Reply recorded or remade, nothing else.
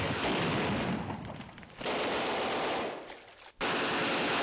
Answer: recorded